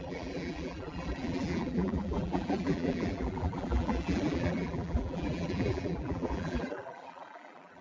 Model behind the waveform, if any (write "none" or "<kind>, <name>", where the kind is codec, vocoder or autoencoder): vocoder, BigVGAN v2